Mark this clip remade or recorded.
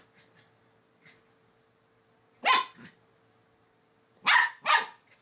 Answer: recorded